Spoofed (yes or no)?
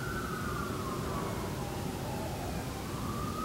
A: no